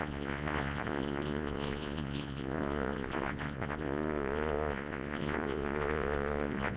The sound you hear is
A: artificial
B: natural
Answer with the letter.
A